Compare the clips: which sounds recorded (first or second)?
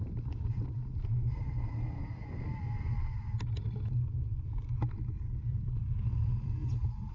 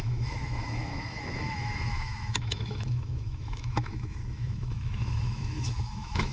first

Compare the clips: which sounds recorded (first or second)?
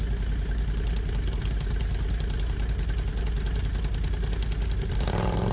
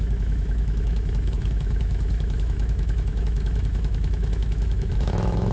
first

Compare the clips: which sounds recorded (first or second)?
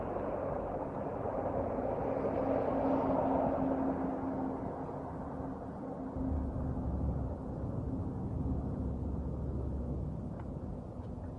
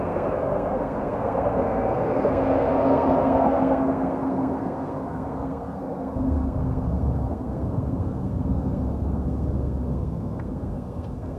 first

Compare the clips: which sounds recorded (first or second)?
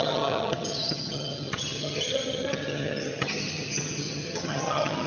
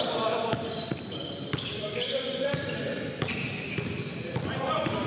second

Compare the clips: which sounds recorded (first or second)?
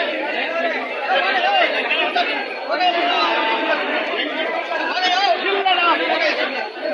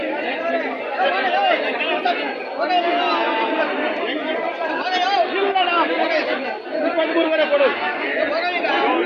second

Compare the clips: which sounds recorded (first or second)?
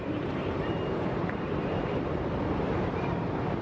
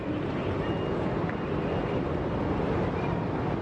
second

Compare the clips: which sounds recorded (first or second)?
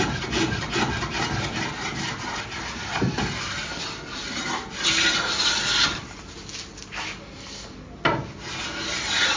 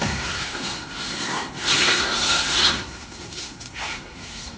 first